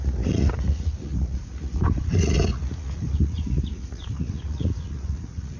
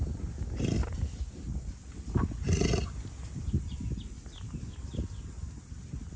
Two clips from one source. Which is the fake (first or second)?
first